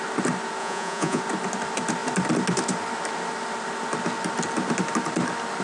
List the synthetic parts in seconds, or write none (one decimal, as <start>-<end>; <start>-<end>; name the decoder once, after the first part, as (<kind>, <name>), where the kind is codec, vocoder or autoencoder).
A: 0.6-1.2 (vocoder, Vocos)